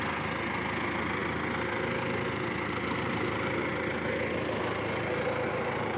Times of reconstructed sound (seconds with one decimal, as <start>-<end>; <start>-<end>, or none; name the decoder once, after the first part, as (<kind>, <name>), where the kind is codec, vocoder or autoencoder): none